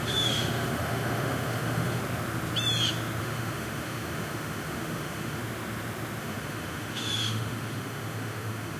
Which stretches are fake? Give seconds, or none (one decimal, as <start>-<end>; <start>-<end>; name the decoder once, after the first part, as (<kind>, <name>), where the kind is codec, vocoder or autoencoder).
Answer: 0.0-2.0 (autoencoder, DAC-VAE); 3.2-5.4; 6.2-8.8